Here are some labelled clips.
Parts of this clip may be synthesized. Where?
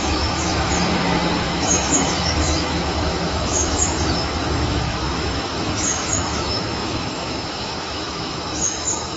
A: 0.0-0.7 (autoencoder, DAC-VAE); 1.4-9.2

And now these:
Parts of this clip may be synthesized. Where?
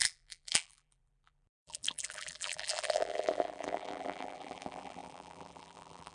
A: 0.0-6.1 (vocoder, BigVGAN v2)